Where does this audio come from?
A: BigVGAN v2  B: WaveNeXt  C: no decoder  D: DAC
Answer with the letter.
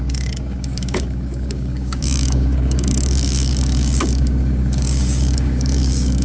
D